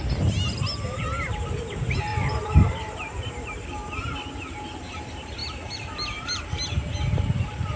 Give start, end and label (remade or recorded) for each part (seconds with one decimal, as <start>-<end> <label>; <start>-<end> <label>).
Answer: 0.0-2.1 recorded; 2.1-3.7 remade; 3.7-5.4 recorded; 5.4-6.4 remade; 6.4-7.8 recorded